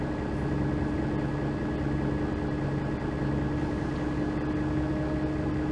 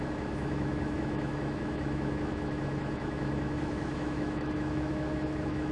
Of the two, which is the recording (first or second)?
first